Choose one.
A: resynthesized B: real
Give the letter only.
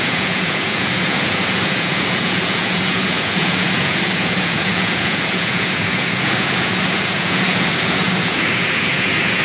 A